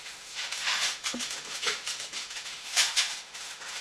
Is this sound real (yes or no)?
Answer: no